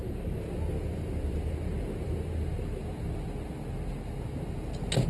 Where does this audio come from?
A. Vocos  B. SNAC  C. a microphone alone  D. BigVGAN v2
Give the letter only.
C